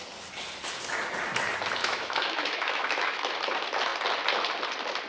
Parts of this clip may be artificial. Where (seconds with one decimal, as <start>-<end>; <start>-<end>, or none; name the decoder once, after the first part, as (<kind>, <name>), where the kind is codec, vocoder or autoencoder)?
1.8-3.3 (autoencoder, DAC-VAE)

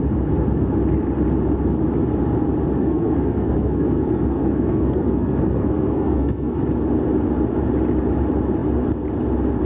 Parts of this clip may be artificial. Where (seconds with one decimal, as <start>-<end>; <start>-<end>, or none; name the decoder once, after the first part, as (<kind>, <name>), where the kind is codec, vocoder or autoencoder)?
2.8-6.6 (codec, SNAC)

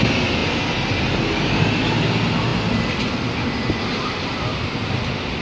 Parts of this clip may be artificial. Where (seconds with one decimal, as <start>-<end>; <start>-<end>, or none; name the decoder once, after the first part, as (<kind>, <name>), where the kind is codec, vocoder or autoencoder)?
none